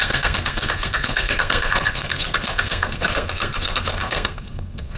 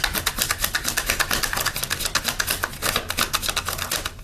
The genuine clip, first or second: second